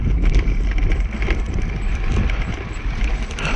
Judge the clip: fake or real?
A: fake